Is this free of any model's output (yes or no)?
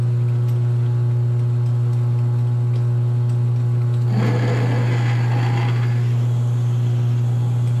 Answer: yes